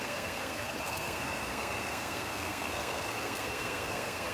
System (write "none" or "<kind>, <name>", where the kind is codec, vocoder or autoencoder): codec, SNAC